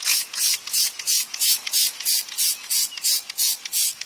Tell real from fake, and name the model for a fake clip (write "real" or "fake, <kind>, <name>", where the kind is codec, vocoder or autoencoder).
fake, vocoder, Vocos